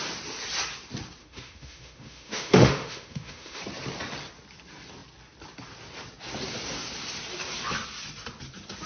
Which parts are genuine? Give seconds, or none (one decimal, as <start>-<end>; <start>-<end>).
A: 0.0-1.2; 3.6-8.9

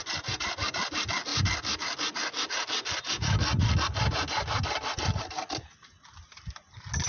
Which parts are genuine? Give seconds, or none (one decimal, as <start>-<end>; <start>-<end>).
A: 0.0-7.1

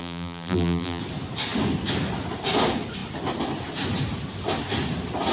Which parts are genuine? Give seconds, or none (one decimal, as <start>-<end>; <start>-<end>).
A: 1.0-5.3